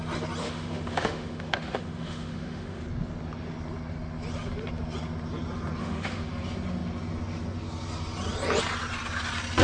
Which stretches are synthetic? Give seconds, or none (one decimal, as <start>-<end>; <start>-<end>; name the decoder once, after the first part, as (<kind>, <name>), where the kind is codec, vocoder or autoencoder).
0.4-2.8 (autoencoder, DAC-VAE); 5.8-6.3